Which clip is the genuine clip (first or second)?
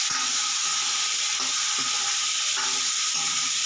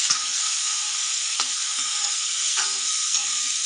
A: first